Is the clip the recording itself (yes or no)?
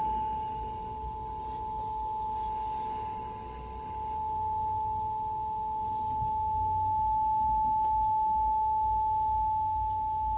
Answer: yes